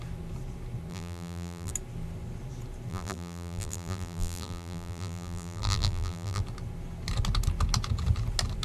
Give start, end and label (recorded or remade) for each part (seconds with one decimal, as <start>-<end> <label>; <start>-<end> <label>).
0.0-0.9 recorded; 0.9-1.7 remade; 1.7-2.9 recorded; 2.9-6.4 remade; 6.4-8.6 recorded